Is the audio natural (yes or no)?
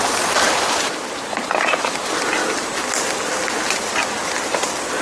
yes